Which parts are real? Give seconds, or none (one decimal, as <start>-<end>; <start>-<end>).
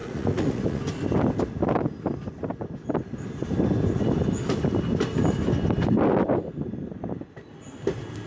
0.8-8.3